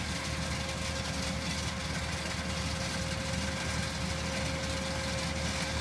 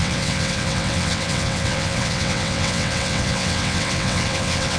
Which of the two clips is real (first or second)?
first